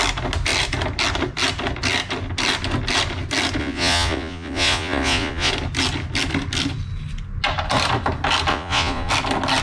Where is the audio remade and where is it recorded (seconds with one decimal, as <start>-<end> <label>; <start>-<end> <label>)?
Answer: 0.0-3.6 recorded; 3.6-5.5 remade; 5.5-8.5 recorded; 8.5-9.1 remade; 9.1-9.6 recorded